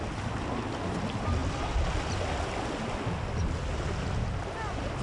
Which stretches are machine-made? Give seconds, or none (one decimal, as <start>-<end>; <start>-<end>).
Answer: none